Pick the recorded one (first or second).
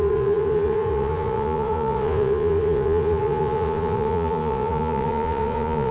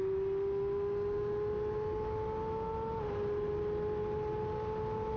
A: second